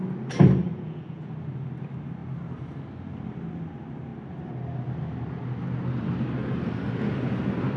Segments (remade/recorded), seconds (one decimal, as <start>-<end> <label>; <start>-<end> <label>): 0.0-0.7 recorded; 0.7-1.3 remade; 1.3-7.8 recorded